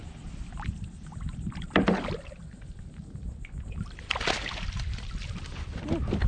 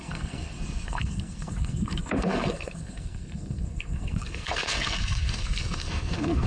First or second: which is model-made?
second